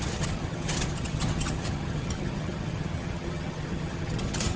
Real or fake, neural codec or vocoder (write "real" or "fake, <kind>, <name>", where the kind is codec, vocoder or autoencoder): fake, vocoder, HiFi-GAN